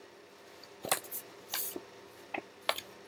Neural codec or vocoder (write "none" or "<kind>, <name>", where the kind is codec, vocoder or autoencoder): none